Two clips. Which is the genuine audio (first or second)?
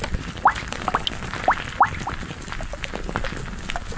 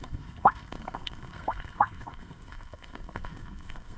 first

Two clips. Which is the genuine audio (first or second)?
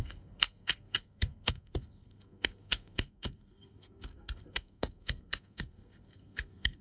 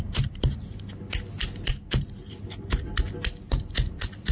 second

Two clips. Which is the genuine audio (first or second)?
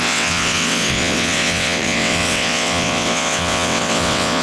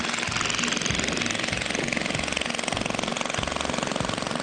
second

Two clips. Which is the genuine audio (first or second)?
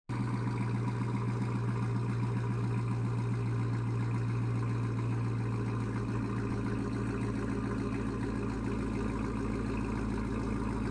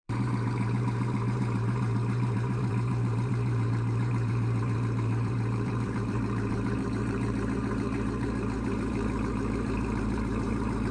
first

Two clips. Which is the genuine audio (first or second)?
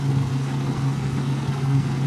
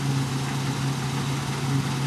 second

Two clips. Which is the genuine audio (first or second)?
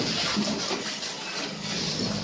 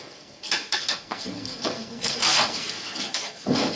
first